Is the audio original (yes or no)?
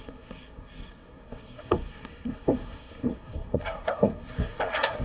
no